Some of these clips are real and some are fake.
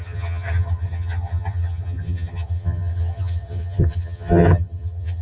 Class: fake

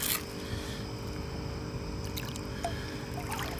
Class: real